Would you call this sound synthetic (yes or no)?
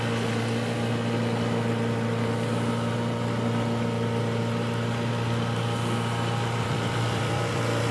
yes